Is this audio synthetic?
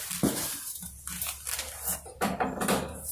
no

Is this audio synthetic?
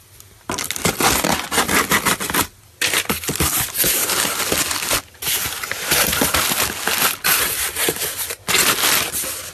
no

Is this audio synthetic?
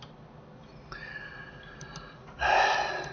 no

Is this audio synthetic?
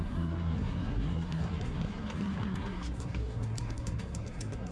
yes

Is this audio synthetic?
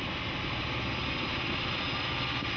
no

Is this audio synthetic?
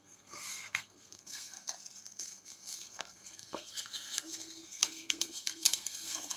yes